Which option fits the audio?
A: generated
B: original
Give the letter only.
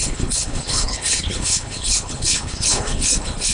A